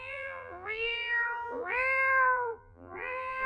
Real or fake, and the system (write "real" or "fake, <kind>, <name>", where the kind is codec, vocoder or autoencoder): fake, vocoder, BigVGAN v2